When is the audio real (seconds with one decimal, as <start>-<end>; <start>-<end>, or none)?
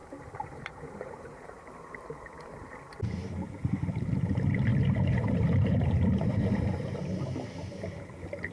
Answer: 2.7-4.7; 7.0-8.5